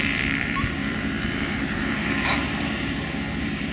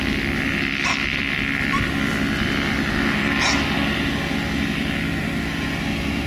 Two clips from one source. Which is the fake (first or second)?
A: first